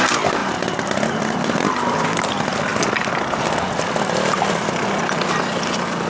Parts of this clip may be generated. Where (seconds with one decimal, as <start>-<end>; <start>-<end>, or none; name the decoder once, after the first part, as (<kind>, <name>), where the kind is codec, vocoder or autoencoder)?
none